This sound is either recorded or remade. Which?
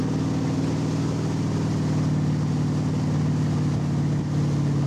recorded